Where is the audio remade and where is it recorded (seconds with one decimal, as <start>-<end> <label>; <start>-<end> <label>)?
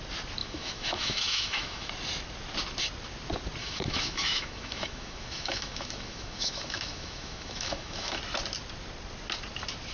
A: 0.0-0.4 recorded; 0.4-1.9 remade; 1.9-3.6 recorded; 3.6-8.2 remade; 8.2-9.9 recorded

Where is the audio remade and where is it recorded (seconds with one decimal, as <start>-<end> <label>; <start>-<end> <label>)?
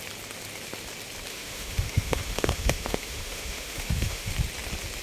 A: 0.0-1.3 recorded; 1.3-4.3 remade; 4.3-5.0 recorded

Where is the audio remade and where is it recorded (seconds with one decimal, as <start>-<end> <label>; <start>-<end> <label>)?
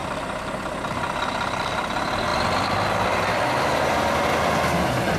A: 0.0-5.2 recorded